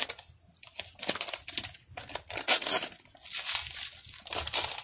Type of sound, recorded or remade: recorded